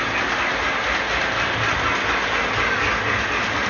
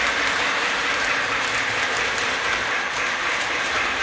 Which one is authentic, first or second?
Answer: first